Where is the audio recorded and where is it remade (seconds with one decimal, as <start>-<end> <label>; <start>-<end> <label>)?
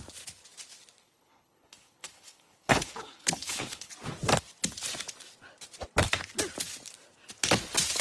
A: 0.0-1.0 recorded; 1.0-3.9 remade; 3.9-8.0 recorded